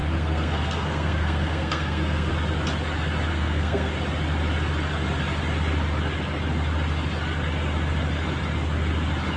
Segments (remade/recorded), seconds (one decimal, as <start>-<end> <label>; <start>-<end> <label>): 0.0-2.3 remade; 2.3-3.3 recorded; 3.3-3.9 remade; 3.9-9.4 recorded